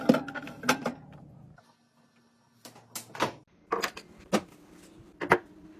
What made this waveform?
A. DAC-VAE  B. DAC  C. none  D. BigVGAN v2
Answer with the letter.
C